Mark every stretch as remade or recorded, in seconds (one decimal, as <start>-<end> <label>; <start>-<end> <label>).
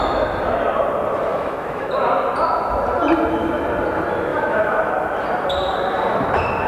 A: 0.0-1.3 recorded; 1.3-1.9 remade; 1.9-4.3 recorded; 4.3-4.9 remade; 4.9-6.7 recorded